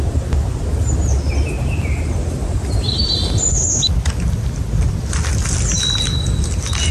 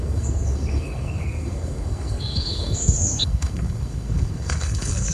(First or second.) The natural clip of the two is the first